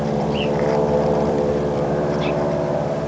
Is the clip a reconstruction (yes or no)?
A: yes